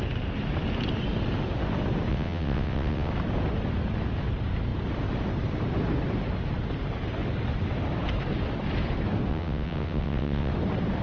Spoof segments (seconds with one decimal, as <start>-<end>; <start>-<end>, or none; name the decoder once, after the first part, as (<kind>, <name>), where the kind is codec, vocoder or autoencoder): 2.1-3.1 (vocoder, WaveNeXt); 9.3-10.5